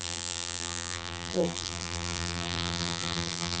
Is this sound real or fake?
fake